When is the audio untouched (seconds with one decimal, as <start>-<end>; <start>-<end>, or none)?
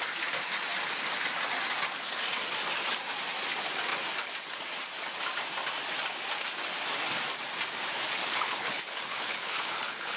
0.0-8.2